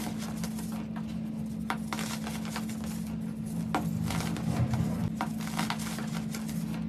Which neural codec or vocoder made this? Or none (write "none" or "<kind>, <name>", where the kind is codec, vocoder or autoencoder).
none